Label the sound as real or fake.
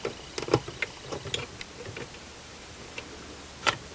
real